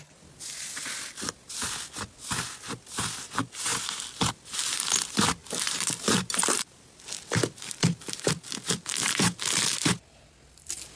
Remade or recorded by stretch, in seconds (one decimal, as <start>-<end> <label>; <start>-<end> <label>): 0.0-5.4 recorded; 5.4-9.8 remade; 9.8-11.0 recorded